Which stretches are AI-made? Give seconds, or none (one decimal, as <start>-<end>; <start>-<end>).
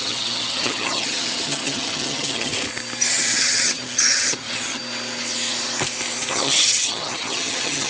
0.0-2.5; 3.1-4.8; 6.3-7.9